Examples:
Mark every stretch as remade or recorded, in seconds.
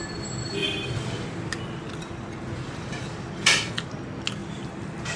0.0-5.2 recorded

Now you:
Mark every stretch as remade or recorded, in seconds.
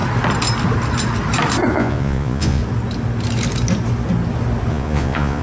0.0-1.7 recorded; 1.7-2.6 remade; 2.6-4.7 recorded; 4.7-5.4 remade